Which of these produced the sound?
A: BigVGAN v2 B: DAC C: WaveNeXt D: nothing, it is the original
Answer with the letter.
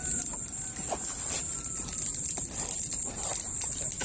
D